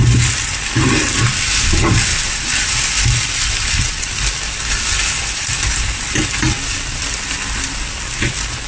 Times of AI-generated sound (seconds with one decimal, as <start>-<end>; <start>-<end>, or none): 0.0-8.7